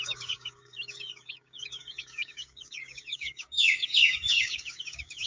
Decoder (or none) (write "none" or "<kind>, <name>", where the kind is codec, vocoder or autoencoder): codec, DAC